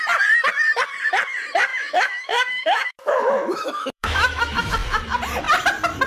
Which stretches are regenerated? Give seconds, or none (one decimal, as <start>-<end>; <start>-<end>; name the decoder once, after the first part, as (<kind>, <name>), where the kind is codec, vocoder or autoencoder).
1.7-4.7 (autoencoder, DAC-VAE)